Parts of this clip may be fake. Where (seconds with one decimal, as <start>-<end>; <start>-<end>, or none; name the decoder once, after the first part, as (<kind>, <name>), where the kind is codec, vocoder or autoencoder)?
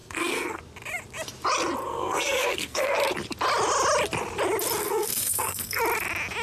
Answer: 0.0-0.6 (codec, SNAC); 1.8-3.0; 4.8-5.8